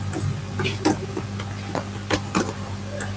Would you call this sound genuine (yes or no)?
yes